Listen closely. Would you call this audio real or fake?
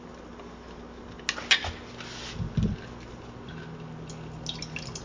real